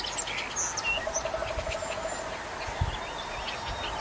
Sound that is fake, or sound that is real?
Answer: real